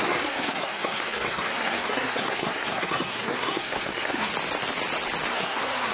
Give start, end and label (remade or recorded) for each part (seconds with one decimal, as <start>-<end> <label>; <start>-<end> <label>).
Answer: 0.0-4.3 remade; 4.3-5.3 recorded; 5.3-5.9 remade

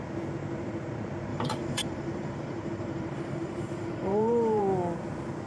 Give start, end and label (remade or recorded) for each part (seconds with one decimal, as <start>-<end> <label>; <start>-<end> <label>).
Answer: 0.0-1.3 recorded; 1.3-4.6 remade; 4.6-5.5 recorded

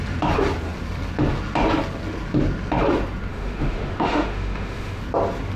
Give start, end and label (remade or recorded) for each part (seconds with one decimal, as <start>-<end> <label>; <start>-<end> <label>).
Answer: 0.0-3.3 recorded; 3.3-5.0 remade; 5.0-5.6 recorded

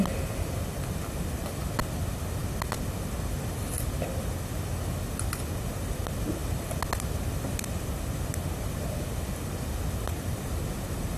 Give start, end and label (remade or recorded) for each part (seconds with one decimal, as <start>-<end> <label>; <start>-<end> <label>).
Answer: 0.0-11.2 recorded

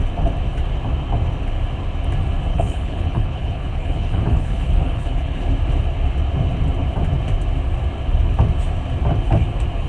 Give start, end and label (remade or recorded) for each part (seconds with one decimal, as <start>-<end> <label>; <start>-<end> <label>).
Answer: 0.0-2.5 recorded; 2.5-5.4 remade; 5.4-9.9 recorded

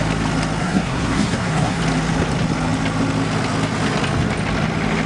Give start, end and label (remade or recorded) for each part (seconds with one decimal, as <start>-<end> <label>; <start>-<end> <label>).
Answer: 0.0-0.6 recorded; 0.6-1.8 remade; 1.8-5.1 recorded

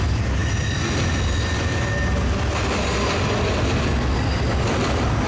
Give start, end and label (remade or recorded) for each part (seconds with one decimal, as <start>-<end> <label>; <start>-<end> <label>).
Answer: 0.0-5.3 recorded

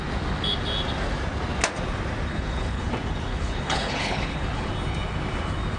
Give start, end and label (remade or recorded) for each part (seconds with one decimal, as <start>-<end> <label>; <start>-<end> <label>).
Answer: 0.0-2.3 recorded; 2.3-2.9 remade; 2.9-3.3 recorded; 3.3-4.7 remade; 4.7-5.8 recorded